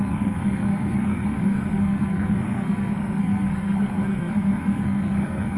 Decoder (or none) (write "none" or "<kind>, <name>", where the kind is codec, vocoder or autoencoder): codec, SNAC